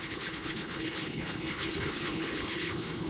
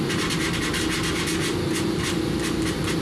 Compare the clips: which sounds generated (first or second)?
first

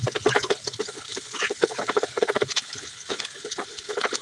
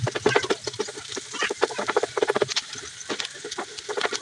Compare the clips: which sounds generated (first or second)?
first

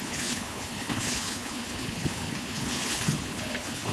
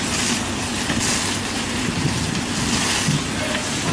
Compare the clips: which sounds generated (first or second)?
first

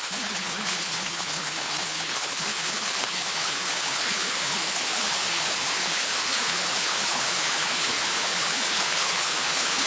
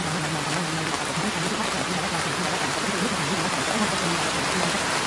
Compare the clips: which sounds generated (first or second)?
first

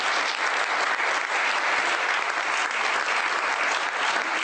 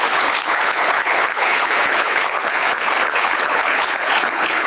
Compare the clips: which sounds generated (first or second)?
second